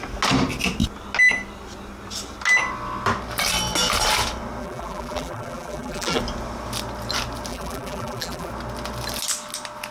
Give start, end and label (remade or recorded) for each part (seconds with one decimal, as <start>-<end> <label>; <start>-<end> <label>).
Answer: 0.0-4.6 recorded; 4.6-6.2 remade; 6.2-7.5 recorded; 7.5-8.5 remade; 8.5-9.9 recorded

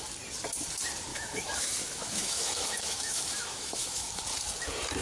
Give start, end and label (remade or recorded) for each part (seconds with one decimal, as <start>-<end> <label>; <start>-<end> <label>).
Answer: 0.0-1.1 recorded; 1.1-4.1 remade; 4.1-5.0 recorded